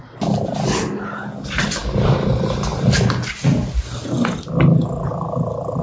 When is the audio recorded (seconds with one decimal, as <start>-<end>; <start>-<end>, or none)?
0.0-5.8

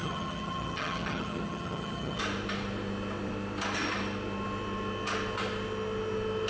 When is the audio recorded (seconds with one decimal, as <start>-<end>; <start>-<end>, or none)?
2.2-6.5